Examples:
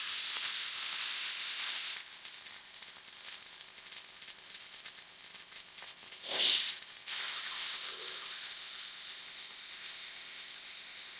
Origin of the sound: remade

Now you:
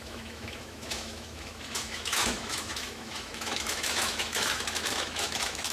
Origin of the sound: remade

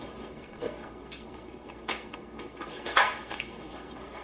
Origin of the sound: remade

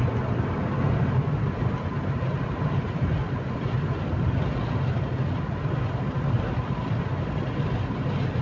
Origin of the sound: recorded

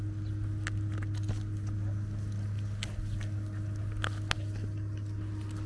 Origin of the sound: recorded